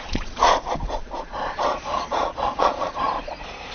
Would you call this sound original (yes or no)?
no